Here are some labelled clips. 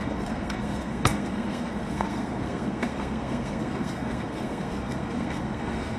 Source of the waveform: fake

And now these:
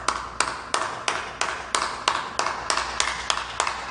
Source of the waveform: real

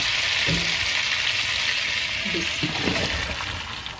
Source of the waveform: real